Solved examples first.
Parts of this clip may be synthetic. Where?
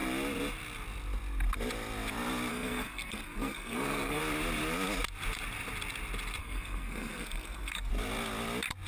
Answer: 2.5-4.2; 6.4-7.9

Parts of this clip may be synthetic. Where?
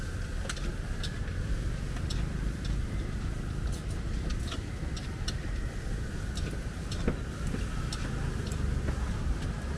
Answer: none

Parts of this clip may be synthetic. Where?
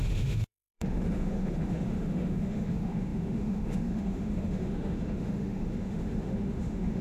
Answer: 0.0-7.0